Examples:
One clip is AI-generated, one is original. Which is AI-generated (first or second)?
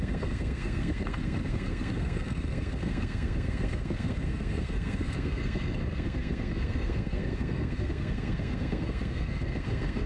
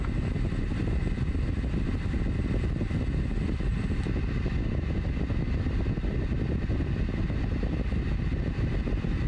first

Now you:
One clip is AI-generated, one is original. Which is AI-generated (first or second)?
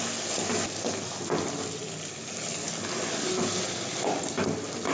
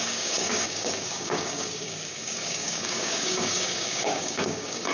second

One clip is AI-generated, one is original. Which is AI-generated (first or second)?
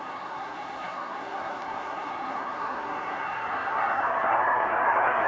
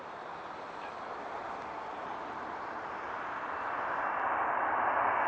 first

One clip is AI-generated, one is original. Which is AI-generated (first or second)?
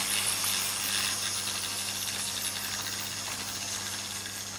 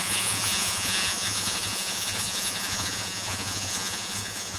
second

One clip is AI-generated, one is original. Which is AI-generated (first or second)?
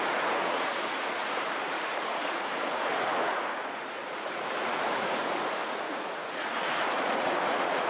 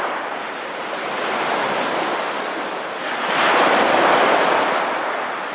first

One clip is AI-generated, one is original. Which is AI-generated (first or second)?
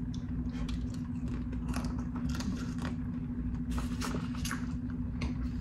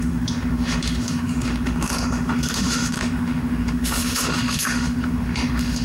second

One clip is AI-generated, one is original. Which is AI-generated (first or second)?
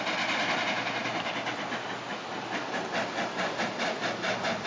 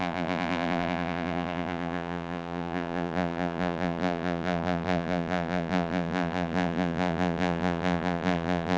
second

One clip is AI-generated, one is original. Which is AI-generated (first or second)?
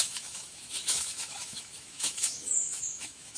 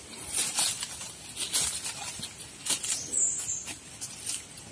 first